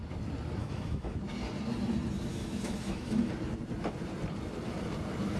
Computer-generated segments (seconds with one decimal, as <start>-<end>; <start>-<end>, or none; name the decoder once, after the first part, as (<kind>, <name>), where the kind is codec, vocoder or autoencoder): 0.6-1.2 (autoencoder, DAC-VAE); 2.3-3.3